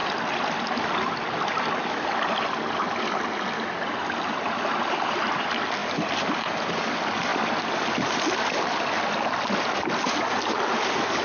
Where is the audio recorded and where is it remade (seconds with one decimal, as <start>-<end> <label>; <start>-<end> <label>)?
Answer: 0.0-11.2 recorded